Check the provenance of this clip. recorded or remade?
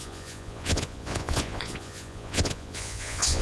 remade